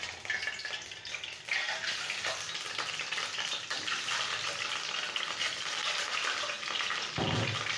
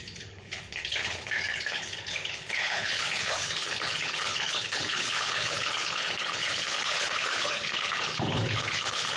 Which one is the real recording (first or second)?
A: first